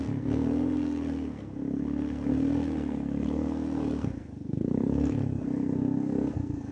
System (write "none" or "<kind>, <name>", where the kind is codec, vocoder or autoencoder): codec, SNAC